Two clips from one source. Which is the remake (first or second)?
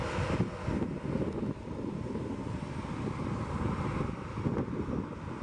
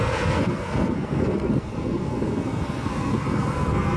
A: second